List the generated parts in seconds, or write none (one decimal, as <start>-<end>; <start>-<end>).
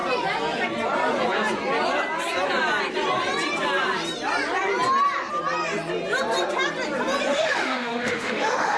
7.3-8.8